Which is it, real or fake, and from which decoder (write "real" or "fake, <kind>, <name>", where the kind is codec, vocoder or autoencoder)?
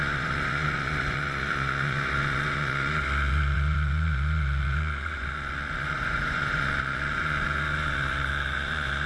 fake, vocoder, Vocos